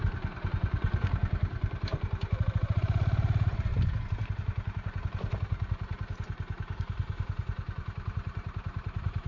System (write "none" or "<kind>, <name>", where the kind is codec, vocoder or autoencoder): vocoder, BigVGAN v2